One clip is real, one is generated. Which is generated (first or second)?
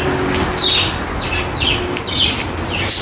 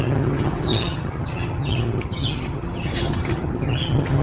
second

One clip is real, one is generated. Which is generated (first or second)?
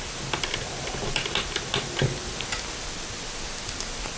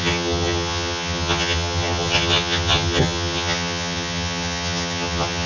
second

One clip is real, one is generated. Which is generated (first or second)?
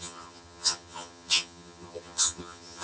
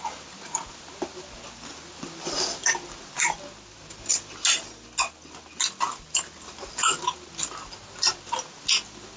first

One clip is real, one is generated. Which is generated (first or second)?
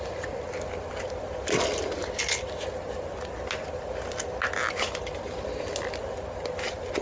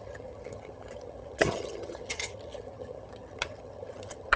second